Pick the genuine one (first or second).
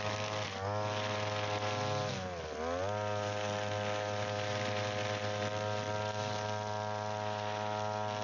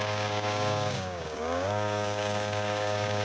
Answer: first